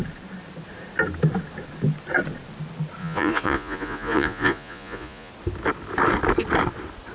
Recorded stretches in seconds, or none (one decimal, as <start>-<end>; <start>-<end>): 0.0-3.0; 5.3-7.1